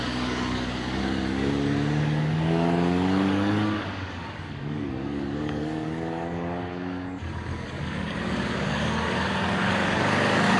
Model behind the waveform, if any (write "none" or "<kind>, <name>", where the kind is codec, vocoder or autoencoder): codec, DAC